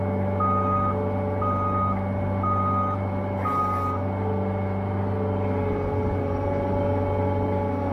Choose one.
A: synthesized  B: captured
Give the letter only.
B